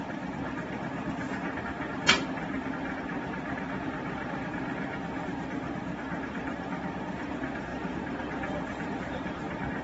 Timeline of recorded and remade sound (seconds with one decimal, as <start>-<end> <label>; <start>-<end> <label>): 0.0-9.8 remade